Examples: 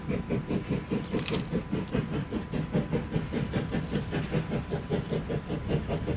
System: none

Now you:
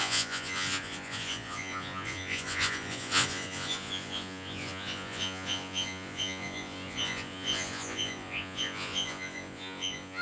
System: vocoder, Vocos